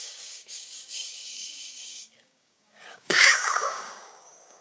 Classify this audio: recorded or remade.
remade